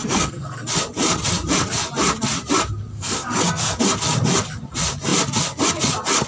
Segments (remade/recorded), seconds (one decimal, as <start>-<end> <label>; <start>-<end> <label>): 0.0-0.6 remade; 0.6-2.9 recorded; 2.9-3.8 remade; 3.8-6.3 recorded